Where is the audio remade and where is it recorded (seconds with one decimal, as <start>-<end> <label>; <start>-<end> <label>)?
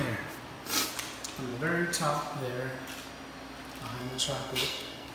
0.0-4.0 recorded; 4.0-5.1 remade